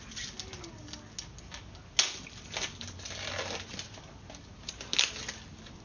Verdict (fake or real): real